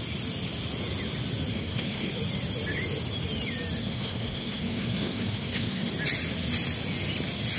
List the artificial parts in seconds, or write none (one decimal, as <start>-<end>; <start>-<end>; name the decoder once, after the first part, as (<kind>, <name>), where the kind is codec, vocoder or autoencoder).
1.5-2.1 (codec, SNAC); 3.8-5.9